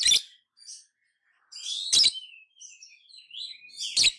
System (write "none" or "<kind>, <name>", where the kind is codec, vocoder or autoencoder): none